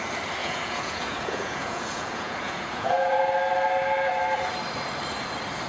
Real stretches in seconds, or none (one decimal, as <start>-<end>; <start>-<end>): 0.0-0.4; 3.2-5.7